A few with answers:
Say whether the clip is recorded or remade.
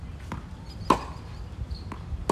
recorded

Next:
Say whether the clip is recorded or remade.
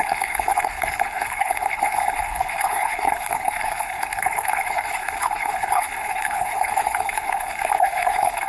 remade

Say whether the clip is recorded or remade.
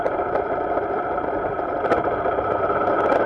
recorded